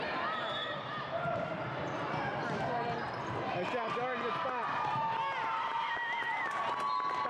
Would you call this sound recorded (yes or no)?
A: yes